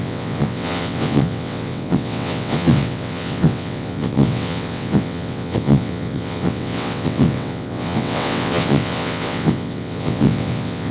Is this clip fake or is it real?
fake